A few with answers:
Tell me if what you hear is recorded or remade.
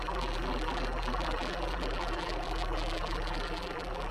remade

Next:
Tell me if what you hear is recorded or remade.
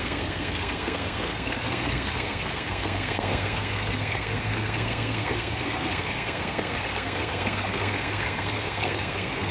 remade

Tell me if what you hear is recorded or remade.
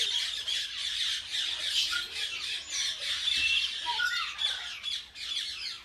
recorded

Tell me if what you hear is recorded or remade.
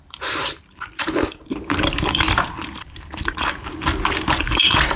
remade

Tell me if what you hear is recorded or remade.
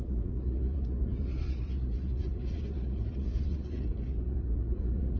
remade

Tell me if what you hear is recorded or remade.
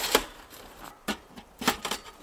remade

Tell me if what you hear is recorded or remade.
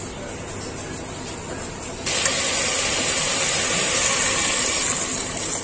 recorded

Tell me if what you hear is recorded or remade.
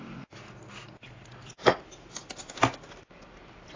recorded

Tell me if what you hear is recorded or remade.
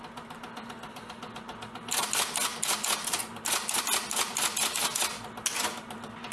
recorded